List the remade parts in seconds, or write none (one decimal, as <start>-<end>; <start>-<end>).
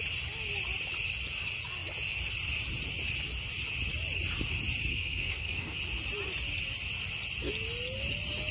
4.9-5.8